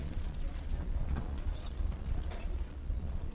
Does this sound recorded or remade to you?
remade